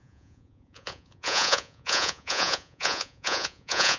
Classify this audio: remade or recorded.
remade